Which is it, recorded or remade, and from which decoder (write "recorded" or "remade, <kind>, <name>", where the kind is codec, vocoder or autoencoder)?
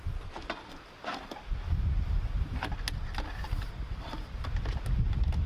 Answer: recorded